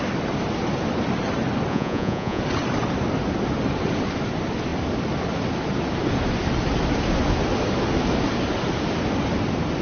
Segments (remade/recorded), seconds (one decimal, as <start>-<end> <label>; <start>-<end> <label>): 0.0-1.7 recorded; 1.7-2.4 remade; 2.4-9.8 recorded